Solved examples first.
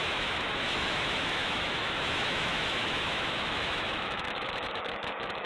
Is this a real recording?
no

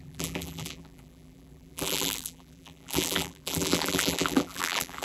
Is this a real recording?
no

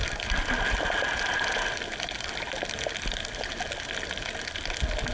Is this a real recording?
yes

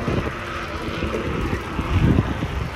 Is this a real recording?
yes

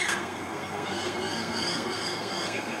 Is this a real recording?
no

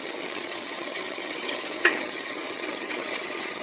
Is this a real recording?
no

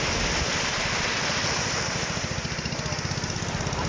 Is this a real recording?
yes